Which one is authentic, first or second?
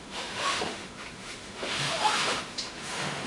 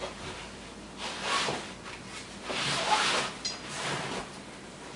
second